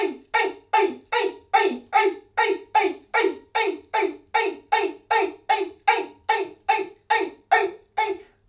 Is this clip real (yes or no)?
yes